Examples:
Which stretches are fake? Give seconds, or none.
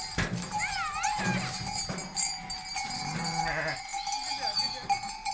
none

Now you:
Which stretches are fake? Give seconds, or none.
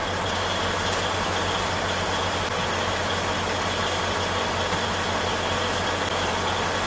none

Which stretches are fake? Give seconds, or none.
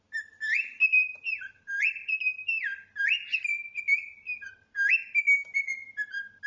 none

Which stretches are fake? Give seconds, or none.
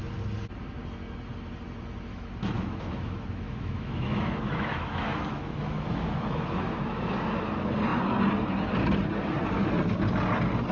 2.1-7.1 (autoencoder, DAC-VAE)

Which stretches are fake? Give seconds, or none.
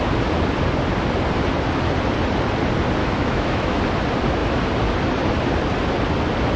3.0-3.8 (autoencoder, DAC-VAE)